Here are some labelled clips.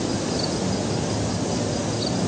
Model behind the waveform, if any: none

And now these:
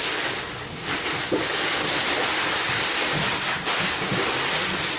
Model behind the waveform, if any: none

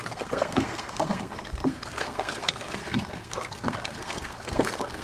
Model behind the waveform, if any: codec, SNAC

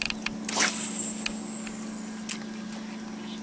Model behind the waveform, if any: none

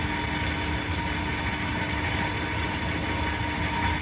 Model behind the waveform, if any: none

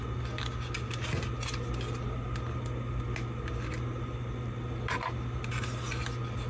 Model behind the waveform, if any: none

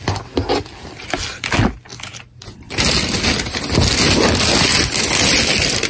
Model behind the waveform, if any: none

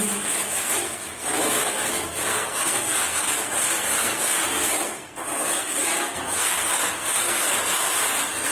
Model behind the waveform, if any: codec, SNAC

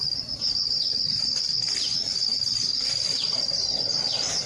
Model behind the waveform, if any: none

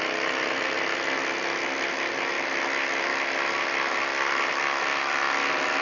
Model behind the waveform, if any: none